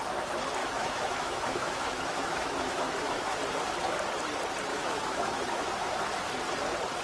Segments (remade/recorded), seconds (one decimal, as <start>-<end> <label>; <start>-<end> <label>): 0.0-0.6 recorded; 0.6-3.4 remade; 3.4-4.7 recorded; 4.7-5.7 remade; 5.7-7.0 recorded